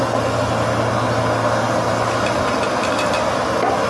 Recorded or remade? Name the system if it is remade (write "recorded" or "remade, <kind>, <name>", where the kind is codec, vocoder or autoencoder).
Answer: recorded